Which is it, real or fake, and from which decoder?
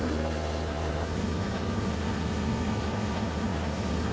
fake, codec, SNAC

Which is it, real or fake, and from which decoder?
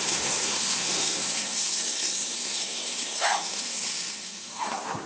fake, codec, SNAC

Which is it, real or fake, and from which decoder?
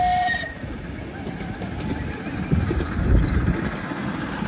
real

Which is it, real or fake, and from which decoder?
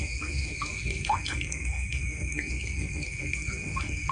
fake, codec, SNAC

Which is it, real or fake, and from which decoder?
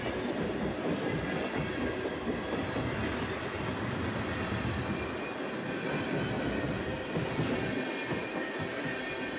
real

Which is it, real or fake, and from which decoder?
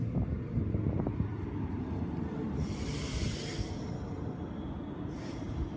real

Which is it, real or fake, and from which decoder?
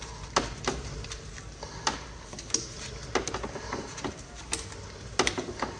real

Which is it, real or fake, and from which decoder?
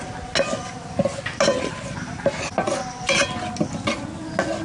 real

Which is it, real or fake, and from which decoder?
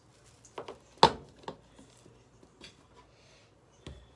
real